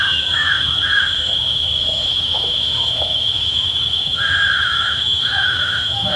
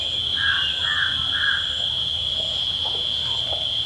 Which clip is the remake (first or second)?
first